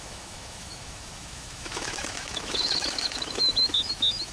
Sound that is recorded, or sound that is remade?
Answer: remade